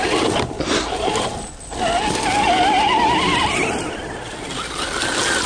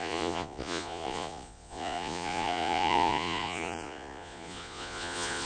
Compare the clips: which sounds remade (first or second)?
second